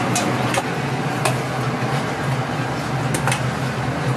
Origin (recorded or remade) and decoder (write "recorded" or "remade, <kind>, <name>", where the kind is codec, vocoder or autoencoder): recorded